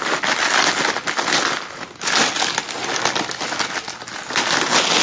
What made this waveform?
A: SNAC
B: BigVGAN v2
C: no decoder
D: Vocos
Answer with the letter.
C